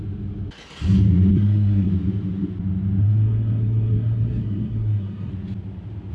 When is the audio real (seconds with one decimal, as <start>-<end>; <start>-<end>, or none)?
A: 0.0-1.3; 1.9-3.0; 5.3-6.1